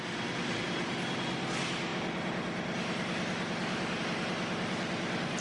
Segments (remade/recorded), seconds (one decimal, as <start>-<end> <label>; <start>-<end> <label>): 0.0-5.4 recorded